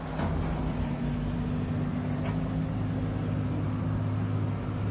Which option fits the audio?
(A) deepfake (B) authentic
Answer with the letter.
B